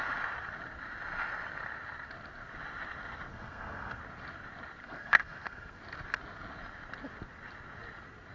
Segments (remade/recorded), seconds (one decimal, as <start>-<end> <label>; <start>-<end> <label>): 0.0-3.3 recorded; 3.3-4.0 remade; 4.0-4.8 recorded; 4.8-5.8 remade; 5.8-8.3 recorded